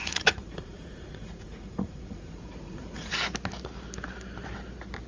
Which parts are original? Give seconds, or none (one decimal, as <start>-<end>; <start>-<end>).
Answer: 3.1-5.1